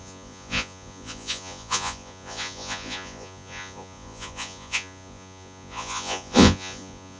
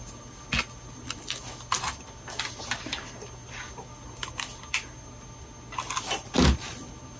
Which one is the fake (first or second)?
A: first